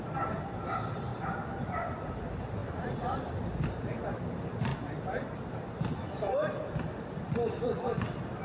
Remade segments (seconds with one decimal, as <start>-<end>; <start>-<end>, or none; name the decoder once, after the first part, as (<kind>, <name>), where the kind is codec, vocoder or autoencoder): 1.1-2.1 (vocoder, BigVGAN v2); 2.6-3.3; 4.7-5.7